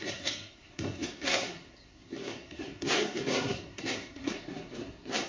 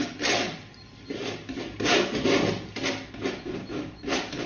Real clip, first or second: second